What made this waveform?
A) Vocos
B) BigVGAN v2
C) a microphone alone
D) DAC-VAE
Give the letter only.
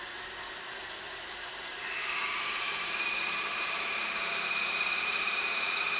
B